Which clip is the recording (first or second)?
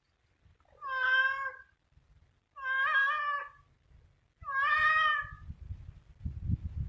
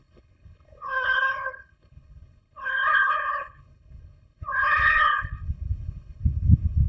first